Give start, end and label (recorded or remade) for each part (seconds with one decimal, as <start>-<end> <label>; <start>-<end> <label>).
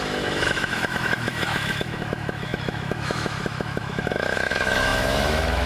0.0-5.7 remade